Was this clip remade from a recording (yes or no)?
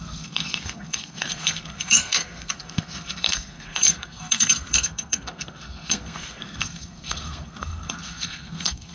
yes